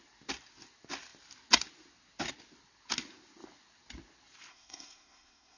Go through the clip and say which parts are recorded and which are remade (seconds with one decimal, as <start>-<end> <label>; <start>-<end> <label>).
0.0-4.5 recorded; 4.5-5.6 remade